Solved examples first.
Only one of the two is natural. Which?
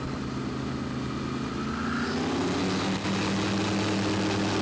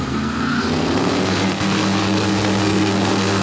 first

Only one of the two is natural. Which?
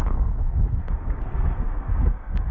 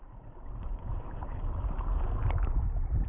second